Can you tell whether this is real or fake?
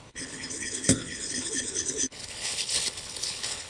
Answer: fake